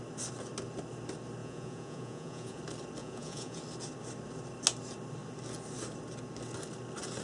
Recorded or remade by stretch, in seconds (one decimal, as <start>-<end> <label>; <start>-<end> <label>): 0.0-1.4 recorded; 1.4-2.6 remade; 2.6-3.0 recorded; 3.0-3.6 remade; 3.6-7.2 recorded